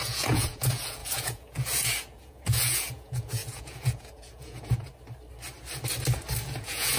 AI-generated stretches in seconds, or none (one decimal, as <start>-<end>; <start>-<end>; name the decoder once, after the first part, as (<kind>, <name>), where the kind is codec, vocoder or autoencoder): 0.0-4.9 (vocoder, Vocos); 6.4-7.0